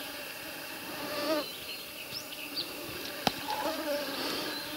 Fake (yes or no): yes